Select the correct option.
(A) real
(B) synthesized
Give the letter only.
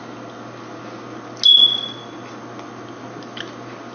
A